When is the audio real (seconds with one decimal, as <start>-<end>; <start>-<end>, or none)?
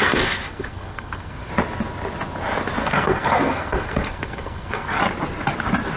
1.5-2.8; 5.0-6.0